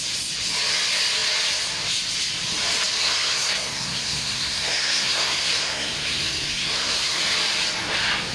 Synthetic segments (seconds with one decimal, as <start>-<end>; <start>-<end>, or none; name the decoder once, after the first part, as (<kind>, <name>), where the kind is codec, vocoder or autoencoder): 3.0-7.2 (codec, SNAC)